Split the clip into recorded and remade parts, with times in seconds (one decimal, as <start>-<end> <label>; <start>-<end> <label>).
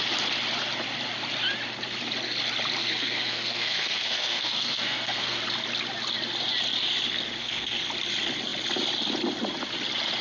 0.0-2.8 recorded; 2.8-5.4 remade; 5.4-7.4 recorded; 7.4-7.9 remade; 7.9-10.2 recorded